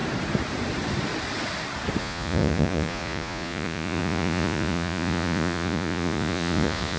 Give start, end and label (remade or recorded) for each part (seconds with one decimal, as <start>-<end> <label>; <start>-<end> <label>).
0.0-2.0 recorded; 2.0-7.0 remade